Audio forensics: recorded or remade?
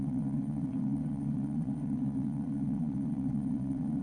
remade